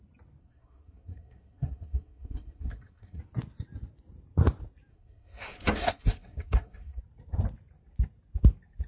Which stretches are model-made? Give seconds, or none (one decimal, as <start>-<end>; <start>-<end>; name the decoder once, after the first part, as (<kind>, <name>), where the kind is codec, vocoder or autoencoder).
0.4-3.2 (codec, SNAC); 4.9-7.0